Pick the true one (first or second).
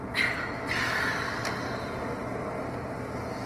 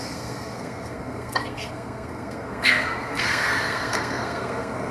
first